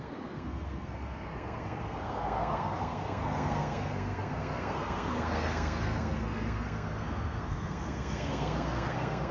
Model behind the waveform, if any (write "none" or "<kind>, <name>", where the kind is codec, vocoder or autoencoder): codec, SNAC